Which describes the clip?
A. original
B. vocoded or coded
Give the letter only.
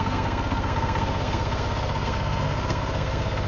B